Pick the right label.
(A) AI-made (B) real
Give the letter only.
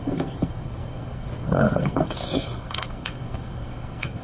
A